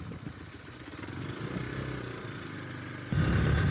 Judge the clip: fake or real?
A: real